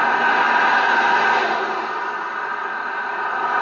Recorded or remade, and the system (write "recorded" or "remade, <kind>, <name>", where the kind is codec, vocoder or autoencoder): recorded